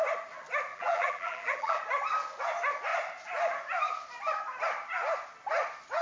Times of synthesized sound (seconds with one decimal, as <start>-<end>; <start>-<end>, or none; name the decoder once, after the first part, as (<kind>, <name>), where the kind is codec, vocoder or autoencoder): 0.7-1.8 (vocoder, BigVGAN v2)